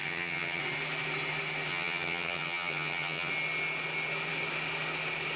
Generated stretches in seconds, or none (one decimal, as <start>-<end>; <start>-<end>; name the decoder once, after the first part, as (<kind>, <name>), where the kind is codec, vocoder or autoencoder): 0.0-0.6 (vocoder, HiFi-GAN); 1.7-3.3